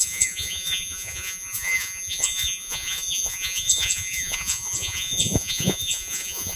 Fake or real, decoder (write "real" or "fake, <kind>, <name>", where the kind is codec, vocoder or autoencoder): fake, vocoder, Vocos